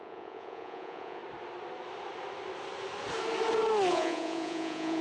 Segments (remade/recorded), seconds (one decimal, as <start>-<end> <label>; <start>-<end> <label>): 0.0-1.2 remade; 1.2-3.9 recorded; 3.9-5.0 remade